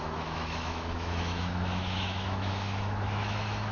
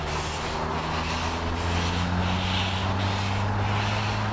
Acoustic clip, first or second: second